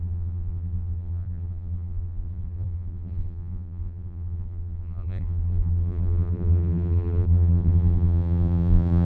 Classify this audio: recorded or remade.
remade